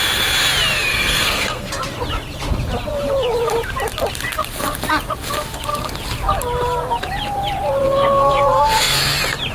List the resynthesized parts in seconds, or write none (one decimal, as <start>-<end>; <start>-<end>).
0.9-1.7; 7.8-9.0